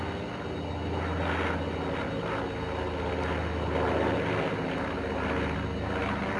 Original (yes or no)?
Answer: yes